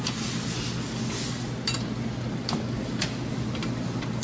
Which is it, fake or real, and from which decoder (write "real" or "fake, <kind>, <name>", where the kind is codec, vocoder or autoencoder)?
real